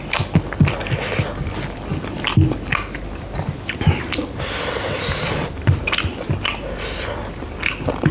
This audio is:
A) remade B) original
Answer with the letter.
B